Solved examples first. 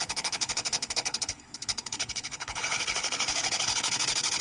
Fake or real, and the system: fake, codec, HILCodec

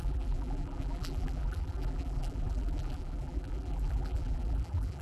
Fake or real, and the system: fake, vocoder, BigVGAN v2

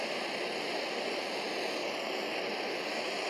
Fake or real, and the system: real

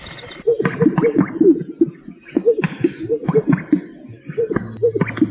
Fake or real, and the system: real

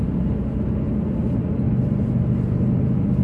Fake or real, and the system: real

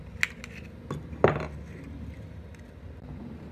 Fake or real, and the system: real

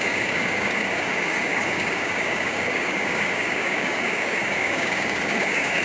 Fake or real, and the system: fake, codec, DAC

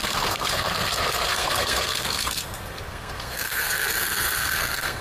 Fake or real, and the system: fake, codec, SNAC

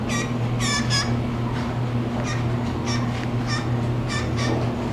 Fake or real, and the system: real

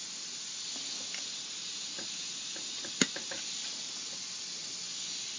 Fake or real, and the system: real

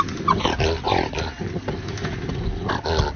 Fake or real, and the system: real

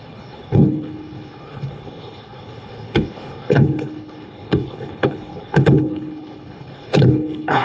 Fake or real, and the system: fake, codec, HILCodec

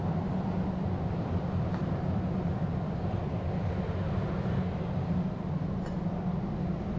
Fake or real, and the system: fake, vocoder, BigVGAN v2